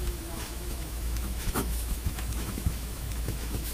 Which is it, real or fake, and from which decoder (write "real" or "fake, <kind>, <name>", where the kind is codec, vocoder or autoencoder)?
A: fake, autoencoder, DAC-VAE